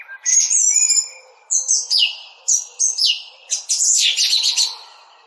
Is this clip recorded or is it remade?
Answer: recorded